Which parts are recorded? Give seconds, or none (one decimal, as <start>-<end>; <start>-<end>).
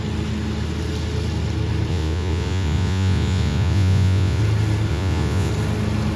0.0-1.9; 4.4-4.9; 5.5-6.2